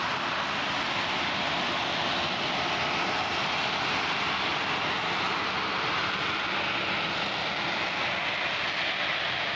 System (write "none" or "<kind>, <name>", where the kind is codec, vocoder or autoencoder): none